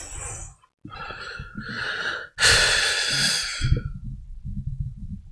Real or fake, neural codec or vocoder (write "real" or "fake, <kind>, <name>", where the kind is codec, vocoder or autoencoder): real